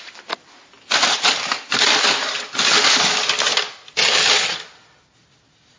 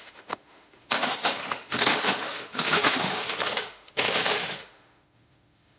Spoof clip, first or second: second